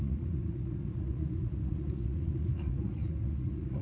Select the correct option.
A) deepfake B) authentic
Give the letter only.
A